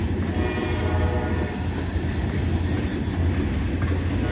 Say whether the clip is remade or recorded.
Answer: recorded